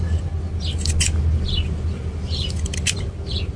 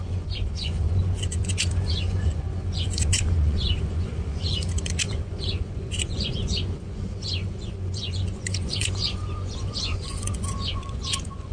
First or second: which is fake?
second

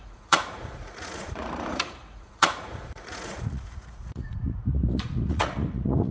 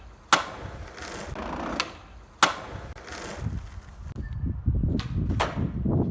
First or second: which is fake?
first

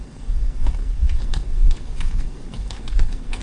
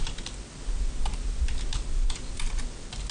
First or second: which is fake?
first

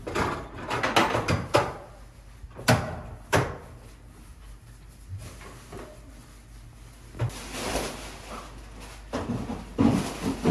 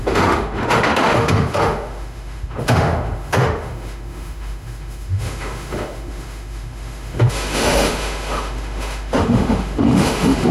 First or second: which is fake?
second